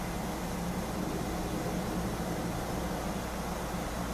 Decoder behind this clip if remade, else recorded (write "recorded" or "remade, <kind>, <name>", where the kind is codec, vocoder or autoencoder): recorded